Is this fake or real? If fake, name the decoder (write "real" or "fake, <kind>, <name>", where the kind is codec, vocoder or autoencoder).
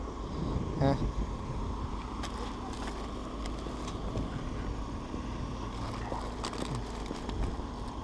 real